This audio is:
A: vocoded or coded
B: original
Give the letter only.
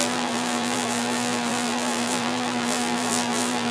A